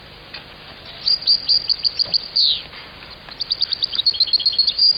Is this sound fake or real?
real